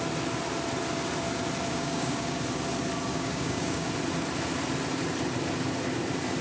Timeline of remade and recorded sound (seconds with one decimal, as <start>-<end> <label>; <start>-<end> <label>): 0.0-1.7 recorded; 1.7-2.4 remade; 2.4-3.1 recorded; 3.1-3.9 remade; 3.9-6.4 recorded